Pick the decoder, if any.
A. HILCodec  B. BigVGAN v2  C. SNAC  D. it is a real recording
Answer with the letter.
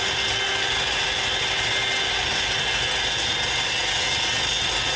D